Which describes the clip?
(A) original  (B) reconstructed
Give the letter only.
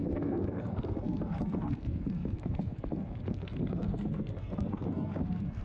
B